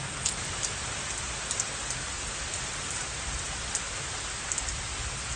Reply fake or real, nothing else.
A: real